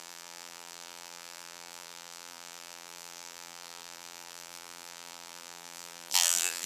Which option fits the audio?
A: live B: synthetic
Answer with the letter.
B